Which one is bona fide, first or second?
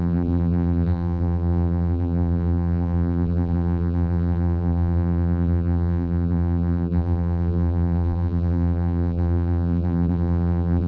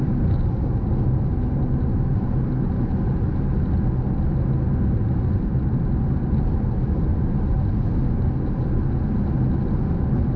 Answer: second